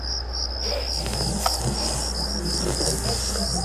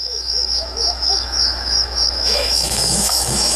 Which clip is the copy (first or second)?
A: second